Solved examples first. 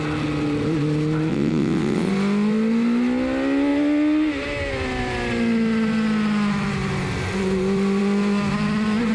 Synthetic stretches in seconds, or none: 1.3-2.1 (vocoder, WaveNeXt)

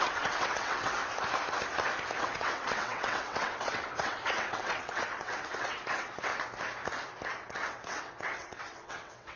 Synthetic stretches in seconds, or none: 0.0-1.0 (vocoder, WaveNeXt); 2.2-6.3; 7.3-9.4

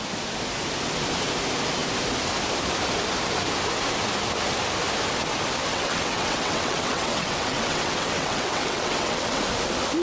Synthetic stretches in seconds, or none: 5.7-9.4 (vocoder, WaveNeXt)

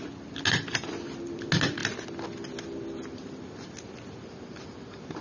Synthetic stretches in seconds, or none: none

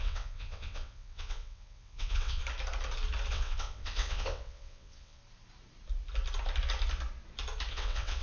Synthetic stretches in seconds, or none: 0.0-2.4 (vocoder, WaveNeXt); 3.3-5.2; 7.7-8.2